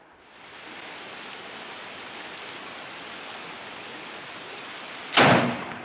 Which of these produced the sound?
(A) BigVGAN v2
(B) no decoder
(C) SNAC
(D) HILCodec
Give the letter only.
B